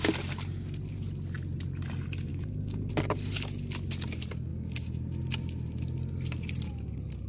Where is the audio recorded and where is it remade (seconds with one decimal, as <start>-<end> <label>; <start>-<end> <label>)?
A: 0.0-2.3 recorded; 2.3-2.9 remade; 2.9-7.3 recorded